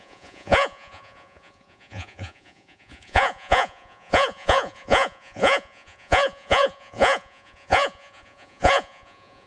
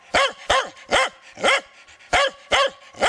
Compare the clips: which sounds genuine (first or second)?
second